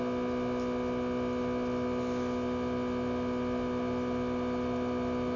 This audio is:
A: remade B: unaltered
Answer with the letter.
B